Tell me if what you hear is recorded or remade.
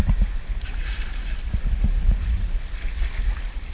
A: recorded